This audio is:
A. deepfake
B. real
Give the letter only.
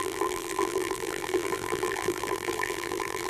A